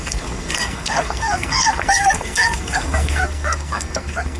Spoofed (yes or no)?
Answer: yes